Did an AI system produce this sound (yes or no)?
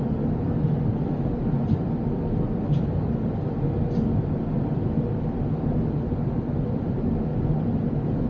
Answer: no